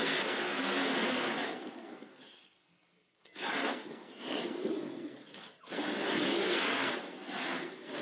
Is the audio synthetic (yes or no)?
yes